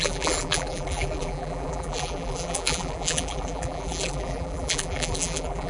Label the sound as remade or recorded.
remade